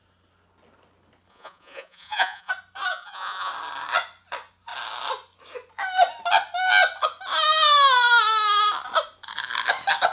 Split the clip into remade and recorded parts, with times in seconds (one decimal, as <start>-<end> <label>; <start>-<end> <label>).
0.0-1.3 recorded; 1.3-2.5 remade; 2.5-2.9 recorded; 2.9-3.5 remade; 3.5-10.1 recorded